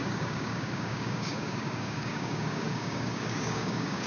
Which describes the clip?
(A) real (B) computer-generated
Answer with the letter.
B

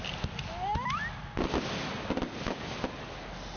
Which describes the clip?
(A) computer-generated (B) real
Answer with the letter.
B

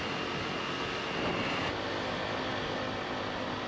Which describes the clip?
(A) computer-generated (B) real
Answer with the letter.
B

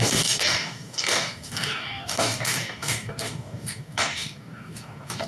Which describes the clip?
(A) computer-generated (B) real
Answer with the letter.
A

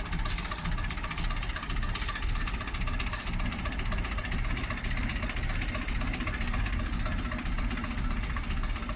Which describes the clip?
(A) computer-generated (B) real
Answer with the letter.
B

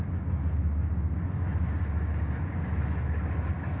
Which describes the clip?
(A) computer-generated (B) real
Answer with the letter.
B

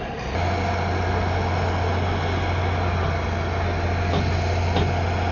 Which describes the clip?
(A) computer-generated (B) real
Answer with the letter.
B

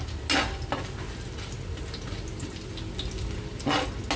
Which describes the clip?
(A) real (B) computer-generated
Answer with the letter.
A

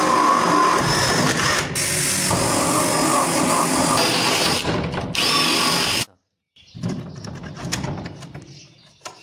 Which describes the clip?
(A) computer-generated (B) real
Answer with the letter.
B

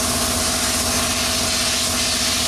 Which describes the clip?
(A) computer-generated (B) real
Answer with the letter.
B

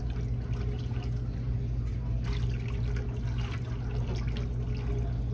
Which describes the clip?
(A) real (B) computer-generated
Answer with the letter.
A